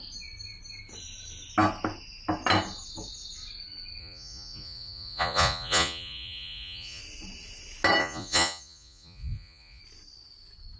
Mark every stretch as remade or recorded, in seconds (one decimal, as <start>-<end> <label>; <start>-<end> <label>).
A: 0.0-4.0 recorded; 4.0-7.0 remade; 7.0-8.0 recorded; 8.0-9.8 remade; 9.8-10.8 recorded

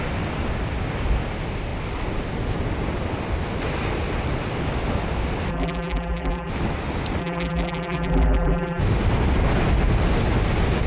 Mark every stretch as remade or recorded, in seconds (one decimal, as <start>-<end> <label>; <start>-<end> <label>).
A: 0.0-5.5 recorded; 5.5-6.5 remade; 6.5-7.2 recorded; 7.2-8.8 remade; 8.8-10.9 recorded

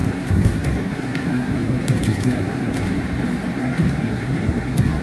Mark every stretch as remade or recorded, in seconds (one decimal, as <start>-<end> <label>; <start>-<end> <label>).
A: 0.0-3.0 remade; 3.0-3.6 recorded; 3.6-5.0 remade

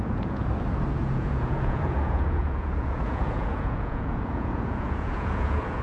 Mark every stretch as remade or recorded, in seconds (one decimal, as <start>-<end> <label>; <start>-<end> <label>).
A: 0.0-0.4 remade; 0.4-1.0 recorded; 1.0-5.8 remade

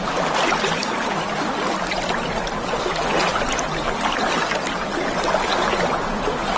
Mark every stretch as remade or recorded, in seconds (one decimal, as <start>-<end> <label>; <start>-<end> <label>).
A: 0.0-6.6 recorded